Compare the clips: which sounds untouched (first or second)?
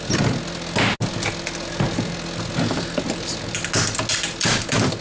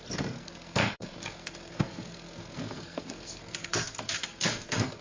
first